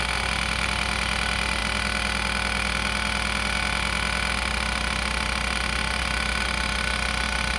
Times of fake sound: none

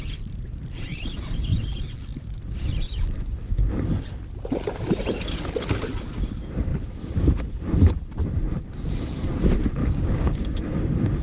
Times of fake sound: 9.8-10.6 (codec, DAC)

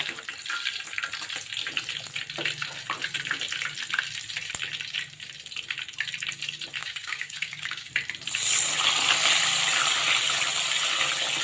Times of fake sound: 6.8-7.9 (codec, DAC)